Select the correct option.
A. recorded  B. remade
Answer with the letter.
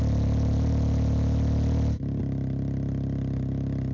A